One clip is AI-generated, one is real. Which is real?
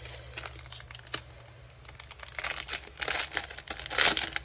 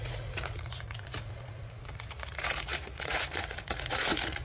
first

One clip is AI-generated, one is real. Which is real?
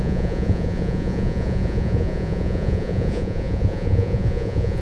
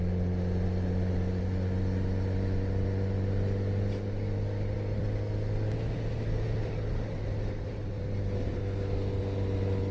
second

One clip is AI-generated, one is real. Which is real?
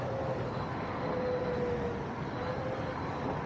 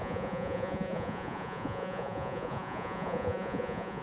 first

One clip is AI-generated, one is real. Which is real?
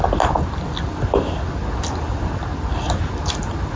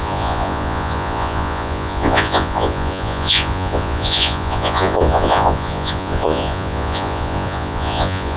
first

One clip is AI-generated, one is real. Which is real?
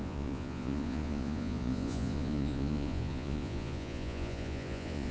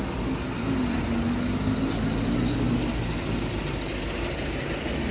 second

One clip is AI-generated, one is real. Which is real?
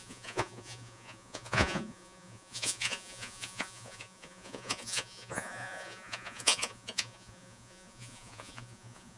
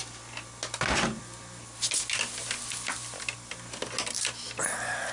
second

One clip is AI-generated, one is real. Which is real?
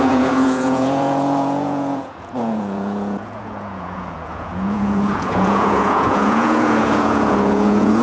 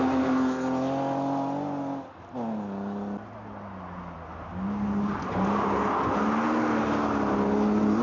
second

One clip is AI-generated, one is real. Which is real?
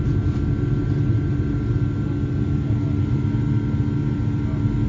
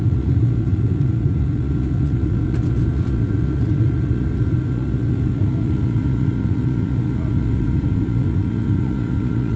first